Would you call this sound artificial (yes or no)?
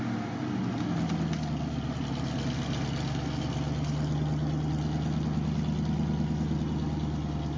no